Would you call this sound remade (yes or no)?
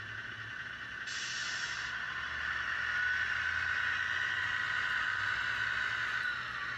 no